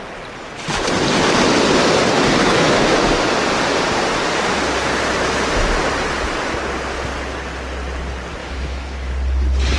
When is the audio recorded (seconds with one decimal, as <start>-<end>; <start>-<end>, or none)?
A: 0.0-2.4; 3.0-8.4; 9.1-9.8